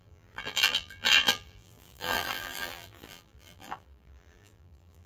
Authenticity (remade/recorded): remade